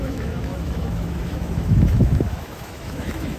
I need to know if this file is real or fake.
fake